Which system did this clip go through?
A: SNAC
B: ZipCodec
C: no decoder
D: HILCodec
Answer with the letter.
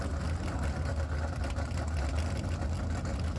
C